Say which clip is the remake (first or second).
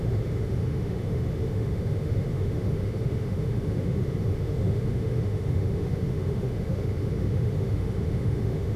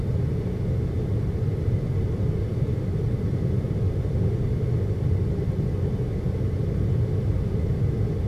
first